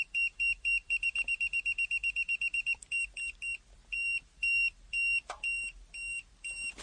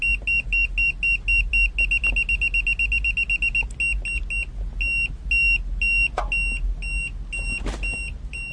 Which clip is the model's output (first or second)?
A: first